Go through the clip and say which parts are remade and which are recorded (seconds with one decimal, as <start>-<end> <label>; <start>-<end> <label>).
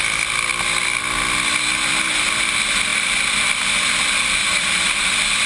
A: 0.0-5.5 recorded